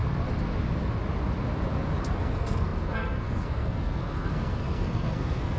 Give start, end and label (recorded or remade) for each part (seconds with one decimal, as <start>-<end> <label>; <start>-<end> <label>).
0.0-2.2 recorded; 2.2-5.6 remade